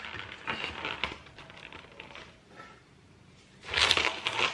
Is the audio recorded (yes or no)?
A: yes